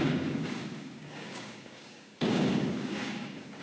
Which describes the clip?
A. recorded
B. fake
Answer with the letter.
B